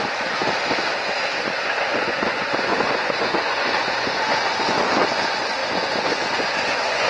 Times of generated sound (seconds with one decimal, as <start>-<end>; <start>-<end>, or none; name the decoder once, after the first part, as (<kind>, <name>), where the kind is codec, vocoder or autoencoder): 0.0-0.4 (vocoder, Vocos); 1.8-7.1